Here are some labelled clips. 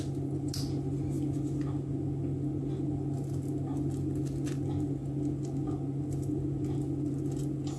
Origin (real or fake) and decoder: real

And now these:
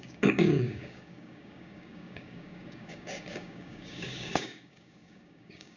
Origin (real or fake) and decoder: fake, codec, DAC